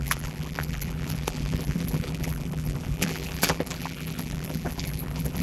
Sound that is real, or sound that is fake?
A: fake